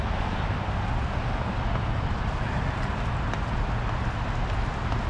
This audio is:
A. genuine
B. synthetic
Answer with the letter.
A